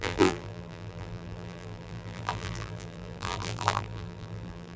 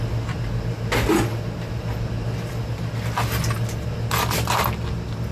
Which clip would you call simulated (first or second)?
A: first